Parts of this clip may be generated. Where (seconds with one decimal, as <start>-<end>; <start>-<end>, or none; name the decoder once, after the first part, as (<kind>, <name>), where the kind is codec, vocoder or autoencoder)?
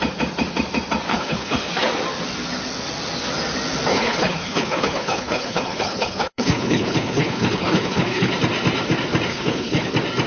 1.1-1.7 (codec, HILCodec); 3.9-8.3; 9.3-9.9